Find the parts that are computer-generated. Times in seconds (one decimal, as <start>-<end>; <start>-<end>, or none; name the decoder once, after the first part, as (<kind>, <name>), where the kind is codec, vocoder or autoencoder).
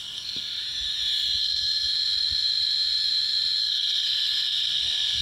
0.0-0.6 (codec, SNAC); 1.4-1.9; 3.6-5.2